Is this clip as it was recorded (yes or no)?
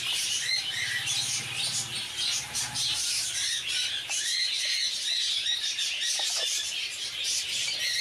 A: no